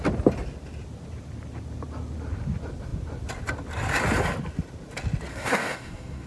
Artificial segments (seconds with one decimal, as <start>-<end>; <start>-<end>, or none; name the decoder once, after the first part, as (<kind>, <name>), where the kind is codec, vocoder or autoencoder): 5.3-6.3 (codec, SNAC)